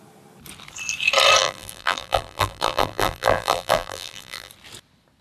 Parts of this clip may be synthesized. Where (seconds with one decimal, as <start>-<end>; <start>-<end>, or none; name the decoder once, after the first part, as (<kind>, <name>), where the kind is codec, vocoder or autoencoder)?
1.4-4.5 (vocoder, BigVGAN v2)